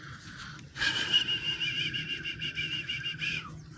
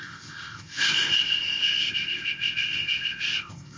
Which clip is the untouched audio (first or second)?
first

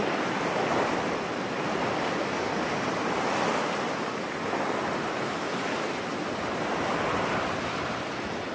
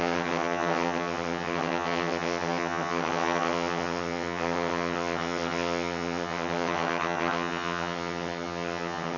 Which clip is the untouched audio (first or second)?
first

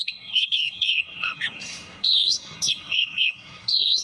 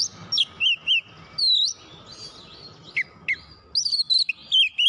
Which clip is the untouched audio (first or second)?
second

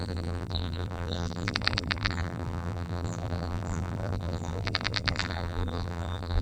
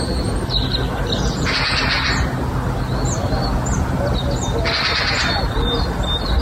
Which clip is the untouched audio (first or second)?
second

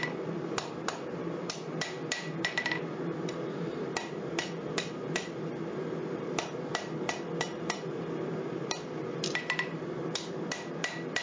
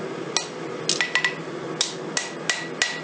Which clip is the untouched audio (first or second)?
second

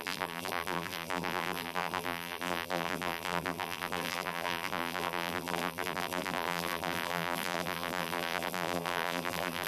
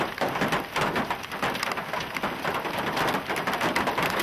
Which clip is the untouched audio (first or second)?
second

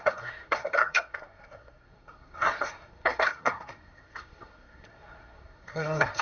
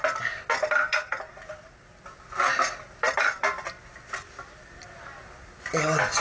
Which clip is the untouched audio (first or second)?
second